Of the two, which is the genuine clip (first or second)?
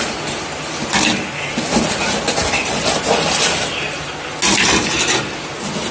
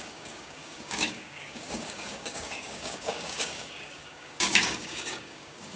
first